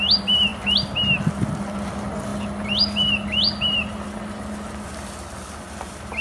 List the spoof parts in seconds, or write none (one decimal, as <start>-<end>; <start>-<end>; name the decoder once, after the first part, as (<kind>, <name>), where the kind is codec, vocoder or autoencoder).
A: none